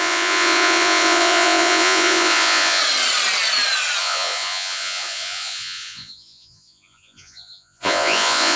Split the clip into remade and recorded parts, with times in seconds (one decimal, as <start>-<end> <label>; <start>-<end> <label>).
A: 0.0-2.8 remade; 2.8-4.0 recorded; 4.0-8.6 remade